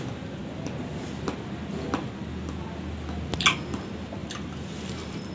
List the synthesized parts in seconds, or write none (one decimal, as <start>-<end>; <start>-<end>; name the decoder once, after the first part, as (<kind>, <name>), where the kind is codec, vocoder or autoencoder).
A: 4.2-5.3 (vocoder, BigVGAN v2)